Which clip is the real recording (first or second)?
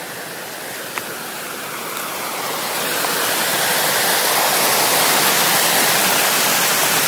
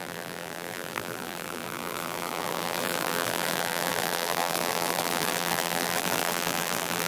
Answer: first